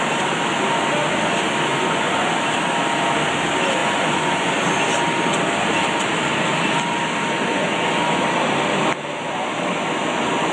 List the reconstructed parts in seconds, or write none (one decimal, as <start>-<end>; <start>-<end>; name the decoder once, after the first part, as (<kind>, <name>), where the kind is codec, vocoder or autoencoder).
1.7-2.3 (vocoder, Vocos); 3.8-4.5; 7.5-8.2